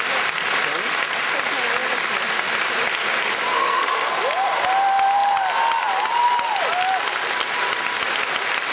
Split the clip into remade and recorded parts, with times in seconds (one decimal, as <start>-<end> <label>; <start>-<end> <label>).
0.0-3.5 recorded; 3.5-4.1 remade; 4.1-8.7 recorded